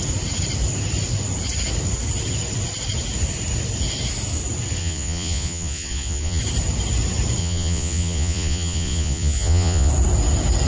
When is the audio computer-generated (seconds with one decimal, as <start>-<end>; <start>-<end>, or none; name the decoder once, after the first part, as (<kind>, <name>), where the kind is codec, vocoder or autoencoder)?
4.8-6.4 (vocoder, Vocos); 7.4-9.9

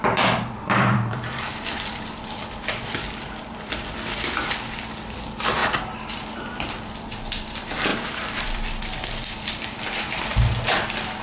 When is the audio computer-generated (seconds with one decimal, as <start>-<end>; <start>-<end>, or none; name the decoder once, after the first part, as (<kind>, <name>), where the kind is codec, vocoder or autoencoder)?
0.0-11.2 (vocoder, BigVGAN v2)